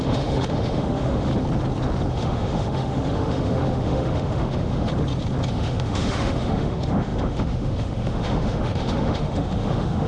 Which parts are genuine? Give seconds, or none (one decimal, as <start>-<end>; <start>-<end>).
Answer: 1.3-2.1; 4.9-5.5